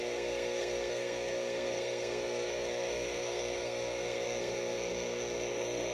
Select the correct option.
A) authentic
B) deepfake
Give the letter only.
B